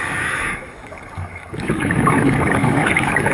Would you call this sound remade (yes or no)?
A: yes